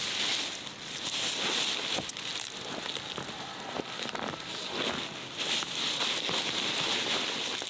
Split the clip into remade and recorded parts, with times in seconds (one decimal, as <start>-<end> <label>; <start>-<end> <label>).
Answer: 0.0-7.7 recorded